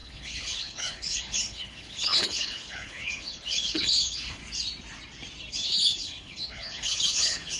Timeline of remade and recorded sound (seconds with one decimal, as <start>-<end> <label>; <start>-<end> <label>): 0.0-4.4 remade; 4.4-5.5 recorded; 5.5-7.6 remade